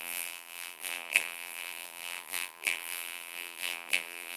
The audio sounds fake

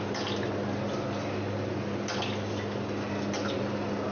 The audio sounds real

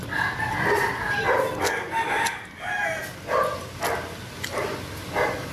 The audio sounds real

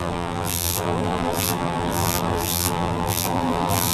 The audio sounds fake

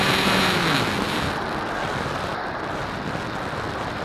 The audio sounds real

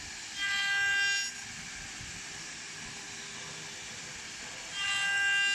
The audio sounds real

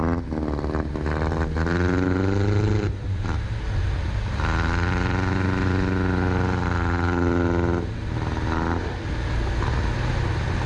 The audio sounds real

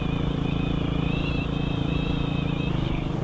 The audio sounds real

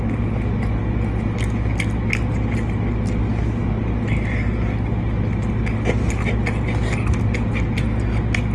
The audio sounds real